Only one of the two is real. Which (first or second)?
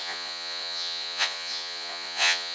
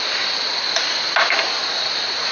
second